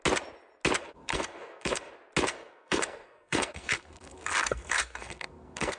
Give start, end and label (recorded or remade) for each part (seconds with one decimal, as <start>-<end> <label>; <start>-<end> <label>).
0.0-0.8 recorded; 0.8-1.9 remade; 1.9-2.3 recorded; 2.3-5.8 remade